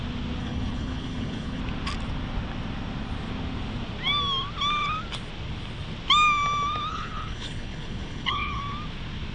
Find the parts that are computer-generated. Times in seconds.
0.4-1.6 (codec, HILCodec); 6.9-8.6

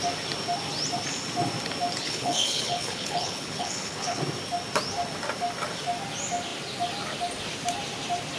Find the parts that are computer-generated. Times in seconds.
2.0-4.2 (codec, HILCodec)